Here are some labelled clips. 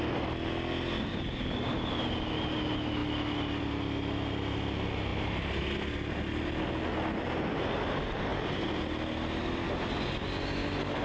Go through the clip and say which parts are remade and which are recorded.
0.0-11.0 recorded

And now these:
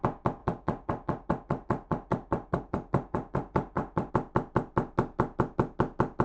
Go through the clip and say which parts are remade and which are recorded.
0.0-0.4 recorded; 0.4-4.1 remade; 4.1-6.2 recorded

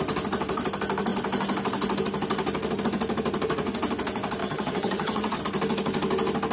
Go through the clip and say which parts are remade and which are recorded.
0.0-4.4 recorded; 4.4-5.4 remade; 5.4-6.5 recorded

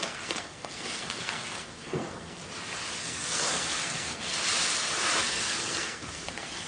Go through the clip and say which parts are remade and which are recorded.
0.0-2.4 remade; 2.4-3.0 recorded; 3.0-4.3 remade; 4.3-5.2 recorded; 5.2-6.7 remade

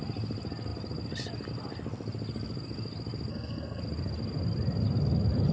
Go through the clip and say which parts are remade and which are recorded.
0.0-3.3 recorded; 3.3-3.8 remade; 3.8-5.5 recorded

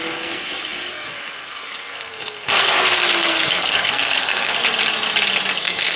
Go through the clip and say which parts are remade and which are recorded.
0.0-4.6 remade; 4.6-5.6 recorded; 5.6-6.0 remade

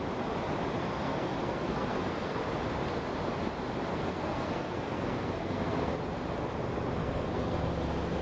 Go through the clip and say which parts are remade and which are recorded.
0.0-0.8 recorded; 0.8-2.4 remade; 2.4-3.9 recorded; 3.9-6.0 remade; 6.0-7.0 recorded; 7.0-7.7 remade; 7.7-8.2 recorded